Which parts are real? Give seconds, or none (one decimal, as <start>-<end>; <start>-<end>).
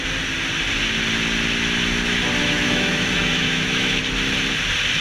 0.0-2.4; 4.0-5.0